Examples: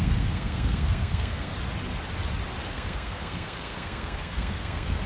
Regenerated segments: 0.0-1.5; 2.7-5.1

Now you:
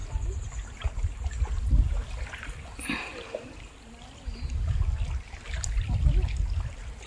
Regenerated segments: none

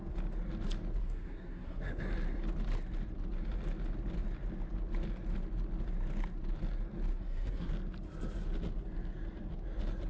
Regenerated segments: 1.0-2.0; 7.1-7.7

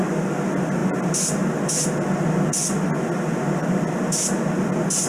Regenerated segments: none

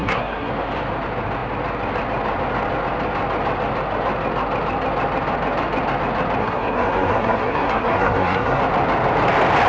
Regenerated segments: 0.0-0.5; 6.4-8.6

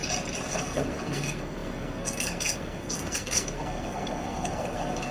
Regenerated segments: 0.5-5.1

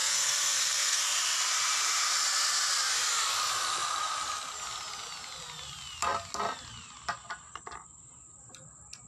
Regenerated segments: 0.0-1.0

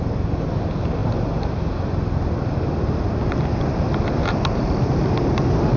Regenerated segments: none